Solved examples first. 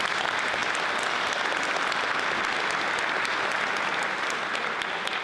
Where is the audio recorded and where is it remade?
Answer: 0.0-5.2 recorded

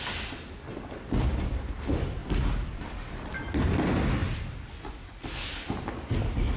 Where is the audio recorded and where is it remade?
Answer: 0.0-6.6 recorded

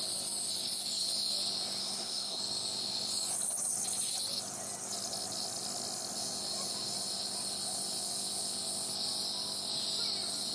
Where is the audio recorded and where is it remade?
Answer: 0.0-1.8 recorded; 1.8-2.4 remade; 2.4-10.5 recorded